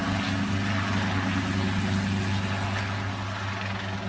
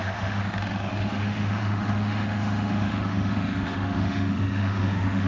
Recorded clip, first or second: first